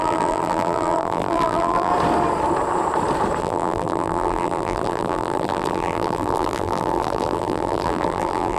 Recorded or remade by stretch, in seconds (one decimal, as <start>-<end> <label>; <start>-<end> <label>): 0.0-1.9 remade; 1.9-3.4 recorded; 3.4-8.6 remade